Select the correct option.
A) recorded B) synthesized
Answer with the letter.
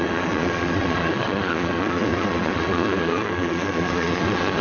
B